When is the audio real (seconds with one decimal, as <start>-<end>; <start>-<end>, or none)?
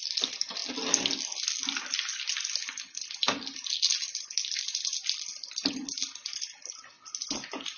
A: 0.0-7.8